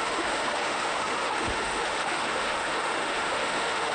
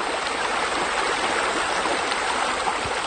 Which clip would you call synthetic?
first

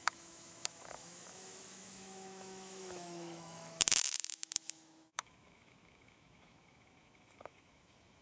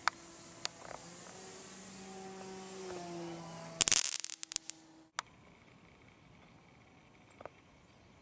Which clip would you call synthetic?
first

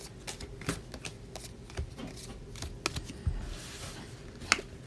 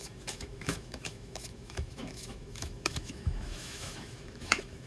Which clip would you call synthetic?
second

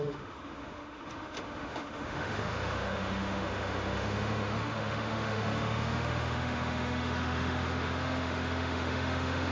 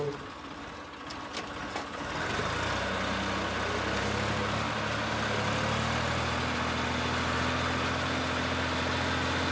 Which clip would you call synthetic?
first